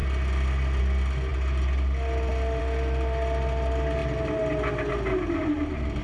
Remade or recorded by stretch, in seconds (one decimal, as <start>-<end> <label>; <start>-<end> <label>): 0.0-6.0 recorded